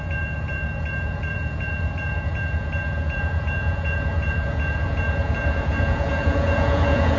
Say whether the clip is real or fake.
fake